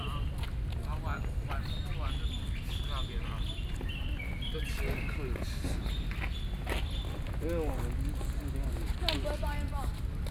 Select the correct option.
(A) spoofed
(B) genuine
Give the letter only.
B